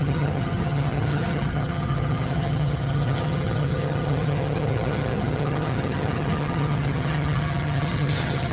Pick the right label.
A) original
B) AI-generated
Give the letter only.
B